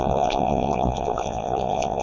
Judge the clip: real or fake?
fake